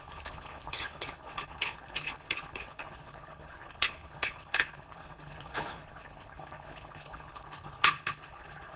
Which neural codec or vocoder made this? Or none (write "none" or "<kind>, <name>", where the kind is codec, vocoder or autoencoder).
codec, HILCodec